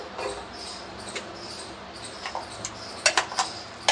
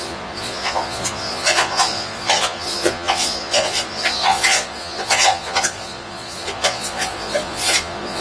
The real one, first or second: first